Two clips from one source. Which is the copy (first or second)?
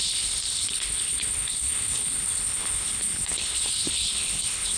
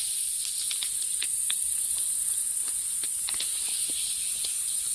first